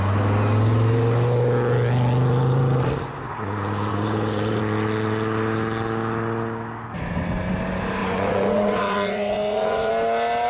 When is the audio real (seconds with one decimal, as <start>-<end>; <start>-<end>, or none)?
0.0-3.9; 4.6-8.0; 9.9-10.5